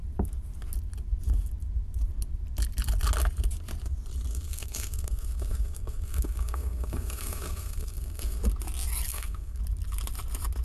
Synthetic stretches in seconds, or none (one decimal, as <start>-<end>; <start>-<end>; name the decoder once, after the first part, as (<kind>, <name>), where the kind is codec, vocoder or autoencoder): 4.3-8.4 (codec, SNAC); 9.1-9.6